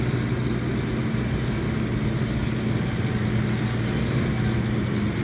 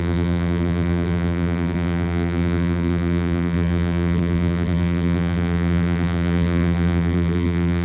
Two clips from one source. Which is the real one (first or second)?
first